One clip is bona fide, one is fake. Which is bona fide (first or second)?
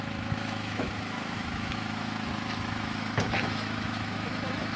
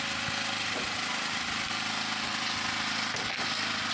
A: second